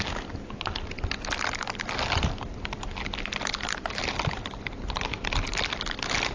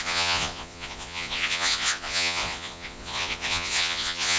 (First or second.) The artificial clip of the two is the second